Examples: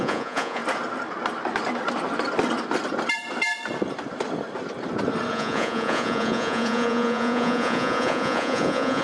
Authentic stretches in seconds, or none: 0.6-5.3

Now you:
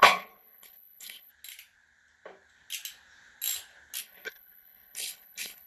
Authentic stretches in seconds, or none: 1.3-4.0

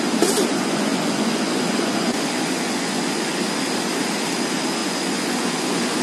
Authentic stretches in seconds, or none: 0.0-0.5; 3.3-4.8

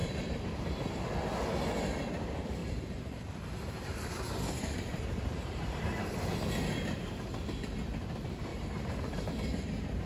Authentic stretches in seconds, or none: 0.6-2.6; 5.8-8.5; 9.3-10.1

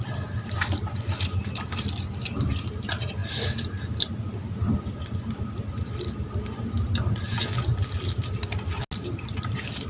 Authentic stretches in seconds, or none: 0.0-9.9

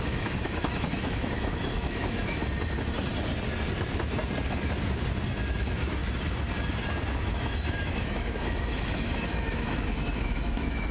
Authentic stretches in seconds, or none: 2.4-5.5; 6.0-7.3